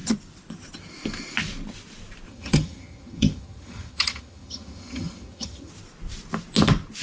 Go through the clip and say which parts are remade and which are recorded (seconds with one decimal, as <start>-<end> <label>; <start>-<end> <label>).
0.0-2.3 recorded; 2.3-5.7 remade; 5.7-7.0 recorded